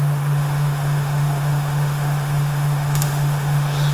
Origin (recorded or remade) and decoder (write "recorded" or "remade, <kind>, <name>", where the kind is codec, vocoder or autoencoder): remade, autoencoder, DAC-VAE